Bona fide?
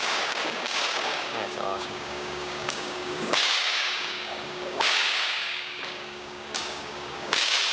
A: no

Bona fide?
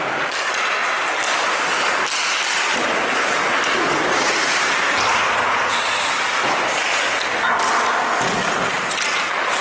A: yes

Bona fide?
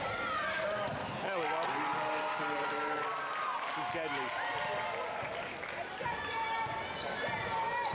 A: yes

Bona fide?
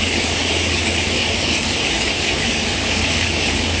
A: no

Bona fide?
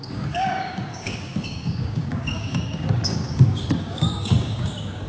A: no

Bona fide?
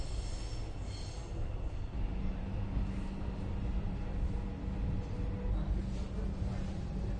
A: yes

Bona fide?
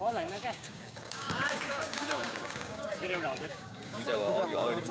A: no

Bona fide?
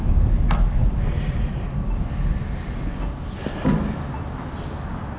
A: yes